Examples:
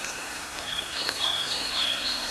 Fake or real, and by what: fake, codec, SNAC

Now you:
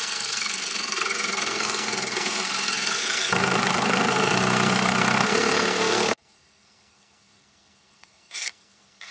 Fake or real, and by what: fake, codec, SNAC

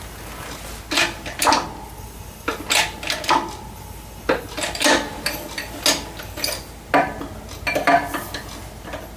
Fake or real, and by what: real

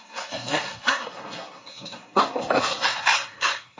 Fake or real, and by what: fake, codec, SNAC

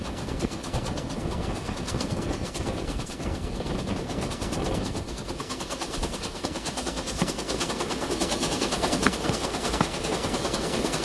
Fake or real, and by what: fake, codec, SNAC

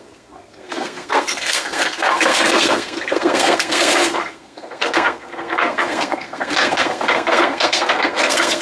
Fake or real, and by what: fake, codec, SNAC